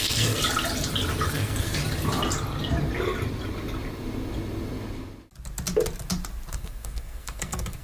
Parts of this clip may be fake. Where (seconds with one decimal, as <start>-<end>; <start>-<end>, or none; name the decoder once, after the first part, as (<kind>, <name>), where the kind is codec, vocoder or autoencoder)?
0.0-0.4 (codec, SNAC); 1.3-1.8; 6.5-7.8